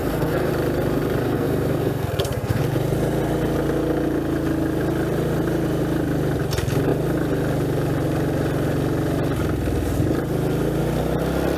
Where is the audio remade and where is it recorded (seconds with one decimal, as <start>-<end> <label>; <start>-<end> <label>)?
0.0-0.5 remade; 0.5-1.2 recorded; 1.2-2.6 remade; 2.6-11.6 recorded